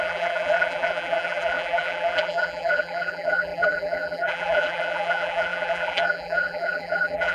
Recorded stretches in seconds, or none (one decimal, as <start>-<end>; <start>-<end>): none